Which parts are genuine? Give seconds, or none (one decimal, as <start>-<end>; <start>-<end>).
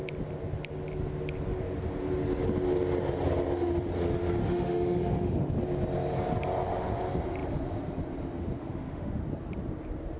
0.0-4.4; 5.5-8.6; 9.2-10.2